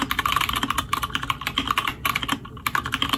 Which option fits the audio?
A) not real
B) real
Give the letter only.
B